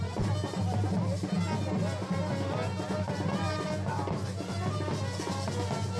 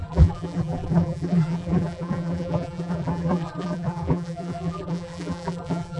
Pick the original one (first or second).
first